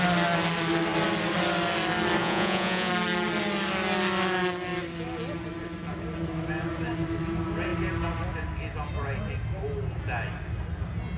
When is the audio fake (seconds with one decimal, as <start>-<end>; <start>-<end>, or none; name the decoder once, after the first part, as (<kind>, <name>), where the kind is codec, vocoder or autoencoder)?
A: 2.2-2.9 (vocoder, Vocos)